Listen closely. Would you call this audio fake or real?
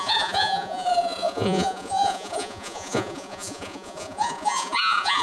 fake